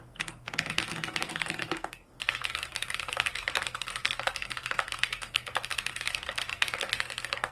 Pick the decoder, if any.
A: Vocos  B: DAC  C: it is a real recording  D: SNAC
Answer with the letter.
D